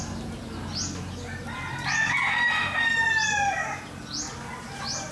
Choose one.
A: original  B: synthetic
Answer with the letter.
A